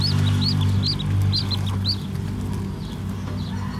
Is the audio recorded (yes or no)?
yes